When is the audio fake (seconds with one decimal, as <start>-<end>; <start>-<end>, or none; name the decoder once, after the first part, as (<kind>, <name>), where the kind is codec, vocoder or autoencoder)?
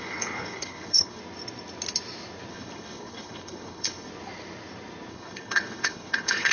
0.0-1.2 (codec, HILCodec); 2.5-4.1; 5.1-6.5